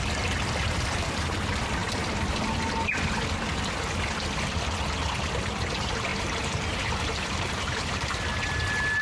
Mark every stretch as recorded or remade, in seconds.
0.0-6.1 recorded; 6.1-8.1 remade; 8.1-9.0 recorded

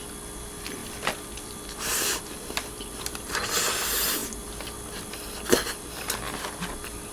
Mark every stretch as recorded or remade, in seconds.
0.0-0.8 recorded; 0.8-3.4 remade; 3.4-7.1 recorded

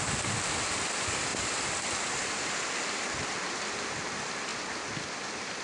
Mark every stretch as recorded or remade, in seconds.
0.0-5.6 remade

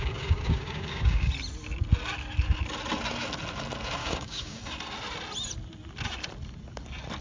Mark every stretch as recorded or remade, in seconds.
0.0-1.3 remade; 1.3-4.0 recorded; 4.0-4.6 remade; 4.6-7.2 recorded

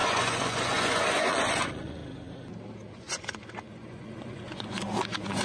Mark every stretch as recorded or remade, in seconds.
0.0-2.0 remade; 2.0-2.9 recorded; 2.9-5.4 remade

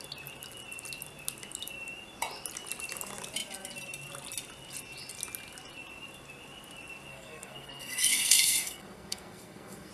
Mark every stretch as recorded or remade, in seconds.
0.0-7.1 recorded; 7.1-9.9 remade

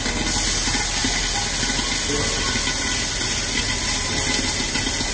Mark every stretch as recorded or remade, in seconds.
0.0-5.1 recorded